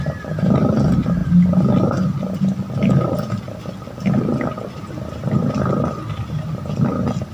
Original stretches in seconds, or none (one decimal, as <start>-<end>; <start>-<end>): 0.0-7.3